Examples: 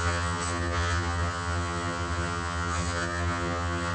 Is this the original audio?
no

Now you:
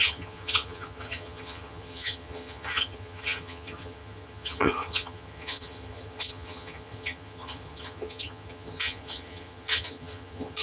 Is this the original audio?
no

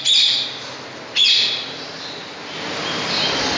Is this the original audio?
yes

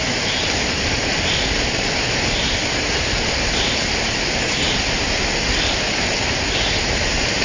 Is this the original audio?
yes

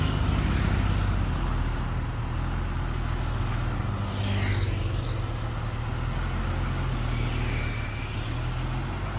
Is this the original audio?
yes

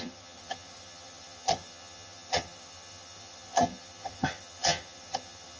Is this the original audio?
no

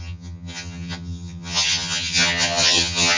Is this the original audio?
no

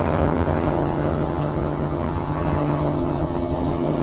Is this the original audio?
no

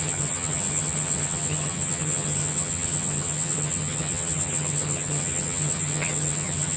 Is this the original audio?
no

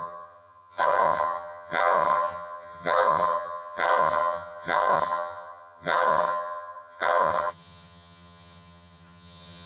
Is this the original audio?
no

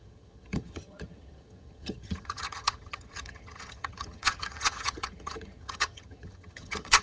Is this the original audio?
no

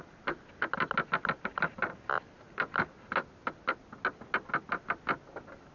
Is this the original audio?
yes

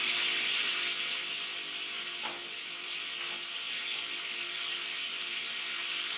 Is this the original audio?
yes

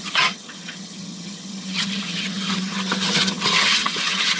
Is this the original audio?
no